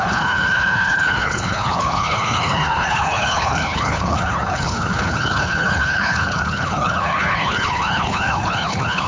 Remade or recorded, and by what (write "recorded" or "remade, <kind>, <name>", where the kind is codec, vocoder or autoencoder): remade, codec, HILCodec